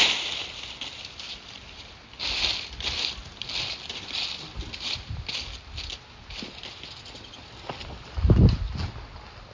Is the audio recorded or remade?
recorded